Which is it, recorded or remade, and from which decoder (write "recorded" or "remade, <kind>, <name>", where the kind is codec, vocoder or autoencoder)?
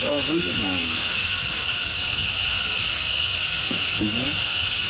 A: remade, codec, SNAC